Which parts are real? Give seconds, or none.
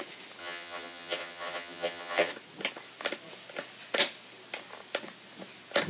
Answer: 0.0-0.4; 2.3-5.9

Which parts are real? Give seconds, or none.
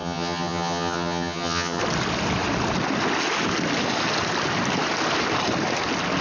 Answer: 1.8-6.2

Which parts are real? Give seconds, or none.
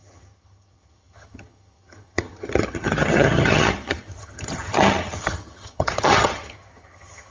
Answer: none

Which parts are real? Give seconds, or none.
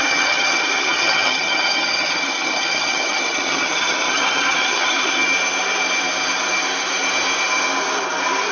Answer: 5.1-8.5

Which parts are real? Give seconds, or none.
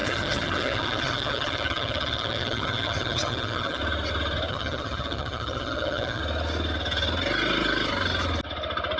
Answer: 3.8-4.5; 6.2-9.0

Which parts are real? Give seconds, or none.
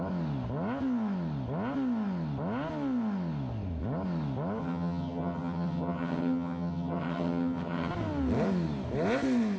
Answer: 0.0-4.6; 7.9-9.6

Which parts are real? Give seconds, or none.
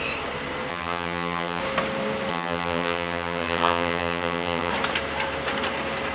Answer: 0.0-0.7; 1.6-2.3; 4.7-6.1